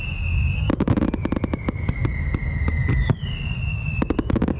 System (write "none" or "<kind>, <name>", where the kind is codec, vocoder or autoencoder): none